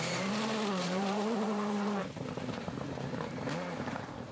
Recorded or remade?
remade